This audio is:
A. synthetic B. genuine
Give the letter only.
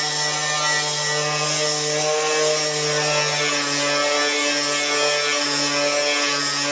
B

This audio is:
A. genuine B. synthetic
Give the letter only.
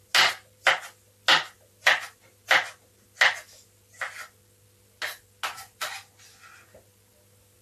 A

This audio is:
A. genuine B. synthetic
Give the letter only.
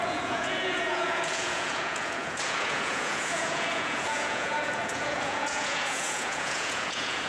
B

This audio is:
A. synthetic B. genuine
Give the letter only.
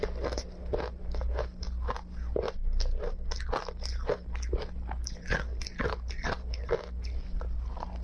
B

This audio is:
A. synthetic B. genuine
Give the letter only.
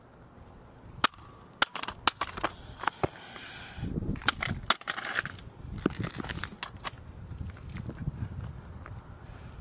B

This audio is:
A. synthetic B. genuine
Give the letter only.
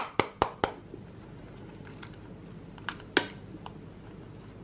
B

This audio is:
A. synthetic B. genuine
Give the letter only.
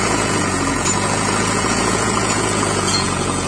A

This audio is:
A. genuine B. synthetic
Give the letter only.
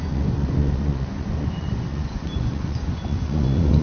B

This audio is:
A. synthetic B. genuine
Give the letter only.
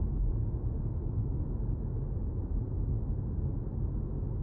B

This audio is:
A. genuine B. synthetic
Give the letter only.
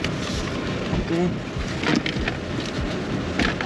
A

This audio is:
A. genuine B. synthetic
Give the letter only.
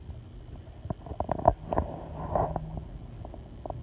A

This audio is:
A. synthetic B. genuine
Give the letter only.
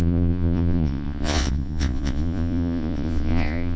A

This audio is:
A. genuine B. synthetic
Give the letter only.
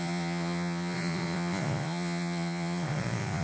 B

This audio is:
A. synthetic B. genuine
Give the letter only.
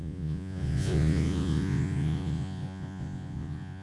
A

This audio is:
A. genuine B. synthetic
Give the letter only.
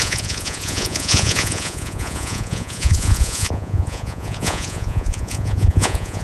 B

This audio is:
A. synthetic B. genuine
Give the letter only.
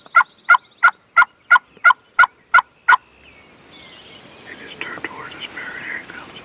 B